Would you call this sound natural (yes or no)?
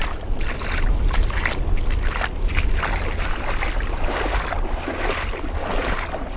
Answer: yes